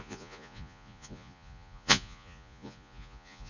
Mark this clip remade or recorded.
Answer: remade